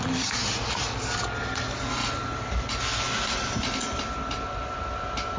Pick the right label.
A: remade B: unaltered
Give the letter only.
B